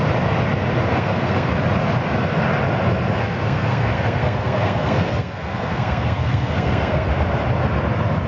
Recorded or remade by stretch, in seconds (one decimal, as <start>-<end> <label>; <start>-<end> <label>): 0.0-0.9 recorded; 0.9-1.5 remade; 1.5-3.2 recorded; 3.2-7.1 remade; 7.1-8.3 recorded

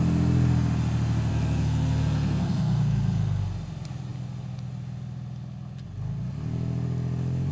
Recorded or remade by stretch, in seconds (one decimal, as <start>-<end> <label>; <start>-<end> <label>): 0.0-1.3 recorded; 1.3-3.4 remade; 3.4-7.5 recorded

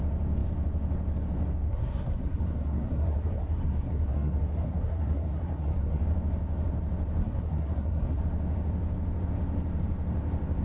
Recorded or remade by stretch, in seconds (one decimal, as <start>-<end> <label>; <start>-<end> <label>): 0.0-1.7 recorded; 1.7-6.0 remade; 6.0-7.2 recorded; 7.2-8.2 remade; 8.2-10.6 recorded

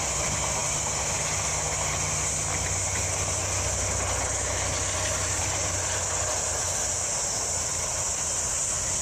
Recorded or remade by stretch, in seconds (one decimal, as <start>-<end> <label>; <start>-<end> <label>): 0.0-9.0 recorded

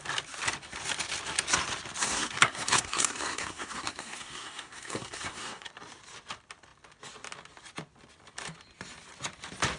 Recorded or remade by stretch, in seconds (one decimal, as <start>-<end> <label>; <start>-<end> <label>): 0.0-2.0 recorded; 2.0-5.7 remade; 5.7-9.8 recorded